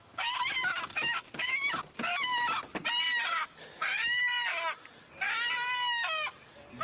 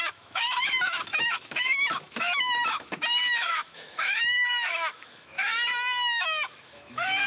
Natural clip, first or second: first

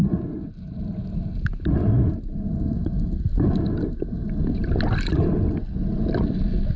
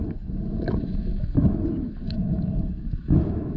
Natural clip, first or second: first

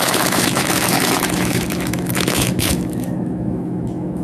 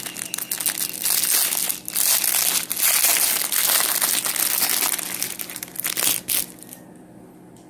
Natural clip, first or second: second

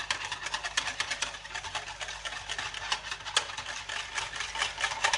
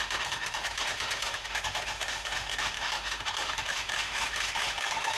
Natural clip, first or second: first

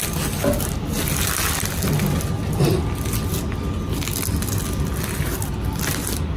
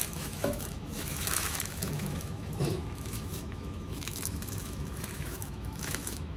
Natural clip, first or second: first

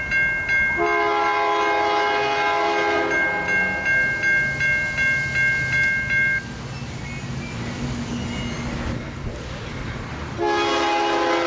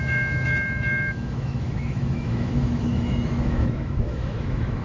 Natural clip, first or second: first